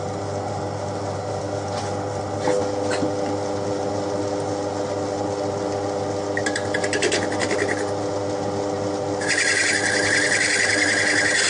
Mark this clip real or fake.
real